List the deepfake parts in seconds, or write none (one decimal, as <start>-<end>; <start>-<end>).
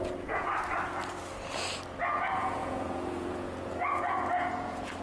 0.0-0.5; 2.0-5.0